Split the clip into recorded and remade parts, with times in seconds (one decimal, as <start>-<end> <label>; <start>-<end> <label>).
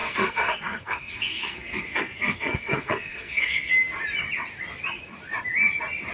0.0-3.7 remade; 3.7-6.1 recorded